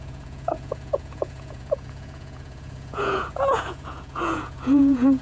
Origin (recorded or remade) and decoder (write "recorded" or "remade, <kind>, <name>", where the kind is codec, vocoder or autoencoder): remade, vocoder, Vocos